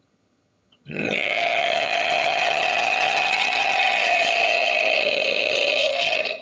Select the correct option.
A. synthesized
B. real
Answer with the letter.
A